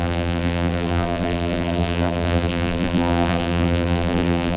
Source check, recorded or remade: remade